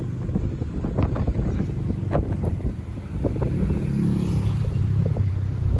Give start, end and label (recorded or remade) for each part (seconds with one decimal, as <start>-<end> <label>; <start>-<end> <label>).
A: 0.0-4.1 recorded; 4.1-5.3 remade; 5.3-5.8 recorded